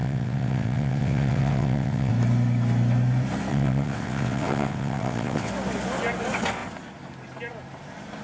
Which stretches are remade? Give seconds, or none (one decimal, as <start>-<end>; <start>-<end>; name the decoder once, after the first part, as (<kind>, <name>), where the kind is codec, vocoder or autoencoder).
0.0-2.1 (vocoder, WaveNeXt); 3.5-5.5

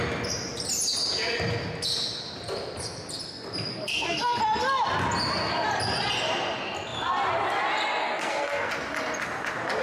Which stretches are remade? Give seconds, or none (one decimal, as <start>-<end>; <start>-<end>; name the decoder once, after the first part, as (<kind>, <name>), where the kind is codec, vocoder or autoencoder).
3.7-4.4 (codec, SNAC); 8.0-8.7

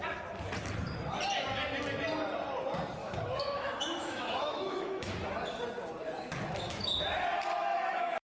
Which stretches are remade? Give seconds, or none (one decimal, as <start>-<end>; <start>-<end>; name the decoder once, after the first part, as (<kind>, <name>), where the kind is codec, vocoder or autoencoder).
3.0-5.1 (autoencoder, DAC-VAE); 7.6-8.3

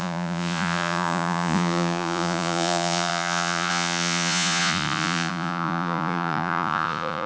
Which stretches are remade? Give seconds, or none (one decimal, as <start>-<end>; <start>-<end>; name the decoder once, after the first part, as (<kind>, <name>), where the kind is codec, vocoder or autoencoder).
0.0-7.3 (vocoder, Vocos)

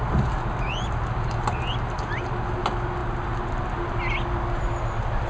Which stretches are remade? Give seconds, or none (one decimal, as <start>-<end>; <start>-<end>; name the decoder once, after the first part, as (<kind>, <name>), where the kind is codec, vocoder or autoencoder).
none

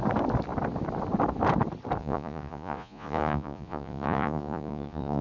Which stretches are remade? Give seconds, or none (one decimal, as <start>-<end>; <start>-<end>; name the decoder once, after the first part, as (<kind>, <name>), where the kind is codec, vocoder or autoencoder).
2.0-5.2 (vocoder, Vocos)

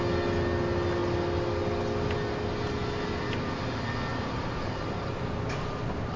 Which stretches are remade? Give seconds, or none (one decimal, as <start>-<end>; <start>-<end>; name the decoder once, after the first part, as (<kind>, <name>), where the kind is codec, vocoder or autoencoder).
4.1-5.1 (vocoder, BigVGAN v2)

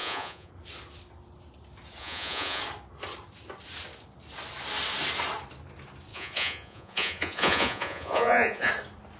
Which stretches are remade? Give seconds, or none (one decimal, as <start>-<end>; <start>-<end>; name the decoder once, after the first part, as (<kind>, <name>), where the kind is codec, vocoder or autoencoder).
0.0-0.5 (vocoder, Vocos); 2.0-2.6; 6.1-8.7